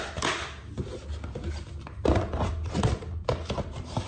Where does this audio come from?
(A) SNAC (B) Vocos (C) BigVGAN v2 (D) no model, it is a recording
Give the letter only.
D